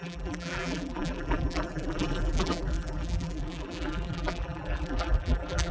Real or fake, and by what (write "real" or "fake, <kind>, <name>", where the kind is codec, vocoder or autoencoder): fake, vocoder, BigVGAN v2